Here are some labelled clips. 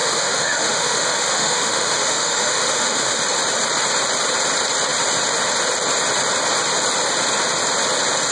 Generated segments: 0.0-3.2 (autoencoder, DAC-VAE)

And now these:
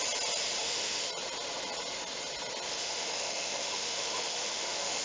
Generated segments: 0.6-1.1 (autoencoder, DAC-VAE); 2.8-5.0

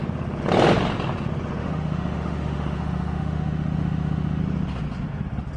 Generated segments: 1.6-4.4 (autoencoder, DAC-VAE)

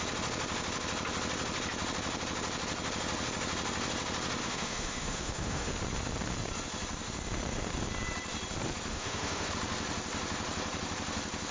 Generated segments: 4.4-5.7 (autoencoder, DAC-VAE); 8.9-9.5

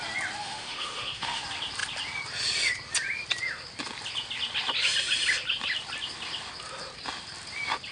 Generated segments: 0.4-1.4 (autoencoder, DAC-VAE)

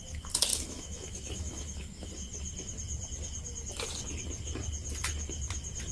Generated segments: 0.5-2.1 (autoencoder, DAC-VAE)

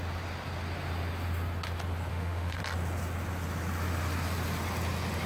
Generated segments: 2.1-2.6 (autoencoder, DAC-VAE)